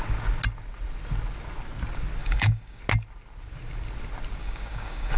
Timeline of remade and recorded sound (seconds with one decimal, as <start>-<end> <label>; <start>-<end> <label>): 0.0-2.2 recorded; 2.2-2.8 remade; 2.8-4.4 recorded; 4.4-5.2 remade

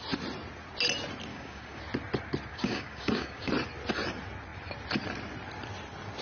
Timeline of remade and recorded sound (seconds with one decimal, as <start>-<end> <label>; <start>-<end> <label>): 0.0-1.3 recorded; 1.3-1.8 remade; 1.8-2.5 recorded; 2.5-3.5 remade; 3.5-6.2 recorded

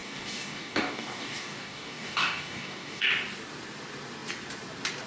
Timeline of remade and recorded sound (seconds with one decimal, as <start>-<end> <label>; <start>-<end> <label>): 0.0-3.1 remade; 3.1-5.1 recorded

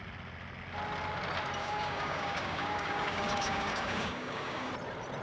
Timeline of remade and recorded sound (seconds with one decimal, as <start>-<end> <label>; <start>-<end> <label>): 0.0-1.6 recorded; 1.6-4.7 remade; 4.7-5.2 recorded